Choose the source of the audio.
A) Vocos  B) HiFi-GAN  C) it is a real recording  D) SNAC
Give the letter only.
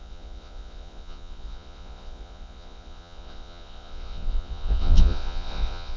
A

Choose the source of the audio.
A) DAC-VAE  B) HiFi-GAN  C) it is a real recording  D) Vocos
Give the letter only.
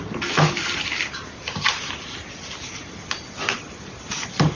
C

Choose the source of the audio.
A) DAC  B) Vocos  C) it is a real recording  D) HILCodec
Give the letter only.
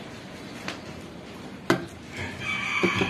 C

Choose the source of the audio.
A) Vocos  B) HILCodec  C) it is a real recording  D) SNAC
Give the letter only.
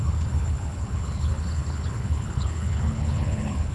B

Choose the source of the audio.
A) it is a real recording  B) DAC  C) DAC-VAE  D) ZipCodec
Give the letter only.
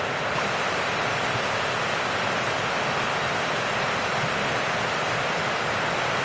A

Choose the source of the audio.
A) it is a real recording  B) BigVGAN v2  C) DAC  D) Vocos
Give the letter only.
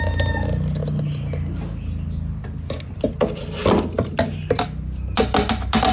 A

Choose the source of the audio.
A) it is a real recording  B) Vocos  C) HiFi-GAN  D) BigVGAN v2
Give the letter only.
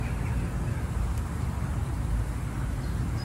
A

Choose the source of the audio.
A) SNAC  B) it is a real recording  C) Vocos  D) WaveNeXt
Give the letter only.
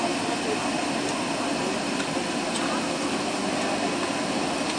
B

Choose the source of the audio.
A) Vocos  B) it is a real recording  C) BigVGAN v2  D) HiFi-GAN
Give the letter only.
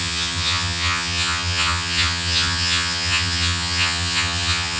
D